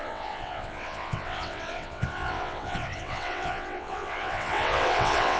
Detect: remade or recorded remade